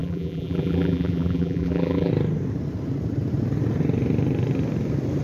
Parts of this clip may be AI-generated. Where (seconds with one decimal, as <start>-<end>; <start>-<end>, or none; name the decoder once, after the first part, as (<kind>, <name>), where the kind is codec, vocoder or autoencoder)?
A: 0.0-2.1 (vocoder, BigVGAN v2)